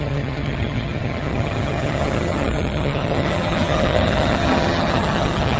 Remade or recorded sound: remade